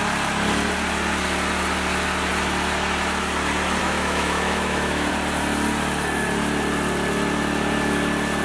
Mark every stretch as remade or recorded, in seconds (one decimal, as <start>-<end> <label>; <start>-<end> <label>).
0.0-3.8 recorded; 3.8-5.1 remade; 5.1-8.4 recorded